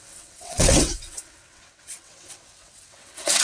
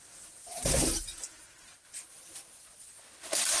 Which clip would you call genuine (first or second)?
second